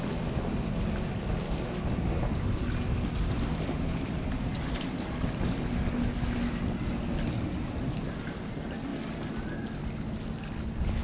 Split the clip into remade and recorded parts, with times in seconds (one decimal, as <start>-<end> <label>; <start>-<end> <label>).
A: 0.0-11.0 recorded